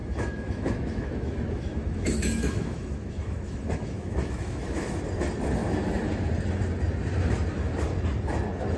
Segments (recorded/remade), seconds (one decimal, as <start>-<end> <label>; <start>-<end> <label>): 0.0-5.0 remade; 5.0-8.8 recorded